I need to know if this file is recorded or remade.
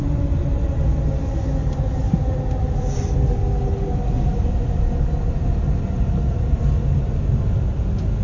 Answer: recorded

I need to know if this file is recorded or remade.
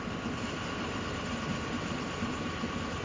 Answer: recorded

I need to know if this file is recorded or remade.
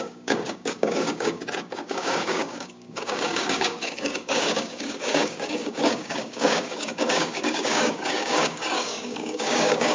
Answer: remade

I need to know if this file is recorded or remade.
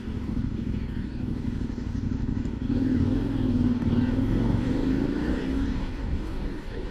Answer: remade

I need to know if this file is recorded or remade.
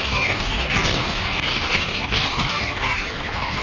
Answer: remade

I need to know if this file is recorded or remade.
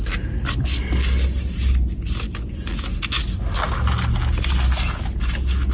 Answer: recorded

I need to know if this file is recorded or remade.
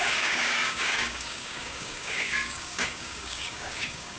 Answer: remade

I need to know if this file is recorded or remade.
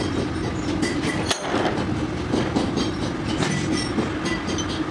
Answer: recorded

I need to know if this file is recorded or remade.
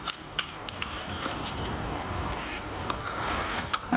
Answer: remade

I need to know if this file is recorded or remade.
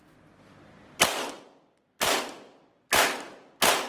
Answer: recorded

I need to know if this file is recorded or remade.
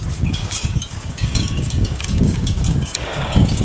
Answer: remade